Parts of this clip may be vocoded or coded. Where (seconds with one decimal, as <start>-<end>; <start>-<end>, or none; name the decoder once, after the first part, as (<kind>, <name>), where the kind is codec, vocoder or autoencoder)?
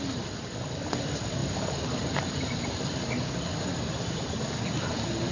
1.4-4.6 (vocoder, BigVGAN v2)